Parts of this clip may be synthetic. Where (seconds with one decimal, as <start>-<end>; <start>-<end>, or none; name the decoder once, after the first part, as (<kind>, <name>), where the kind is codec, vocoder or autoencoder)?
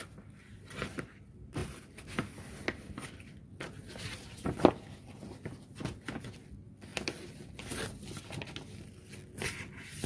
none